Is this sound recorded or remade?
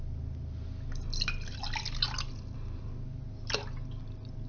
recorded